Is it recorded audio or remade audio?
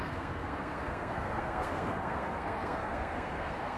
remade